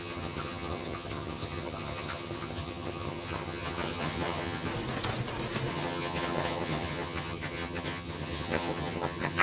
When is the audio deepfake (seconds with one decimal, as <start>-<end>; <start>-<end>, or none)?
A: 0.0-4.7; 5.7-9.4